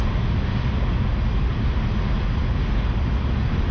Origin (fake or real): real